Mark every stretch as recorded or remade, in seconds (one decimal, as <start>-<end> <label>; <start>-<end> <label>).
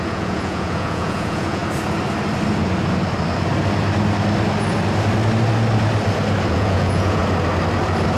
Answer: 0.0-1.6 remade; 1.6-6.5 recorded; 6.5-7.2 remade; 7.2-8.2 recorded